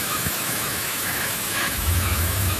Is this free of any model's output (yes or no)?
no